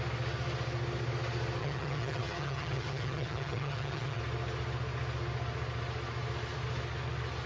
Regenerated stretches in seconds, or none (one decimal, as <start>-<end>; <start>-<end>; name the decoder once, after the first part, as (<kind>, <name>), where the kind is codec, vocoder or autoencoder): 1.6-4.2 (vocoder, HiFi-GAN)